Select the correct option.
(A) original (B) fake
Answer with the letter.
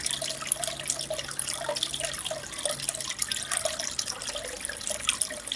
A